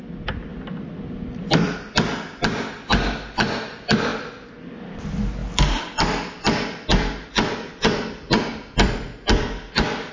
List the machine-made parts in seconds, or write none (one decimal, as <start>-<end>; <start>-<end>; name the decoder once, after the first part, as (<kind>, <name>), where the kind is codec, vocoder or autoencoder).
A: none